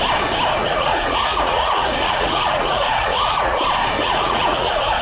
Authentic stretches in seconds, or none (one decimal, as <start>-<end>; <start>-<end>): 0.0-0.6; 3.6-4.0